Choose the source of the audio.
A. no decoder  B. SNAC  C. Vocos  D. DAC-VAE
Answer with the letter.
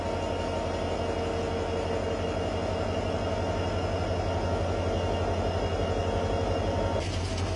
A